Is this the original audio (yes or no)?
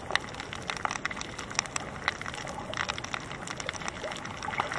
yes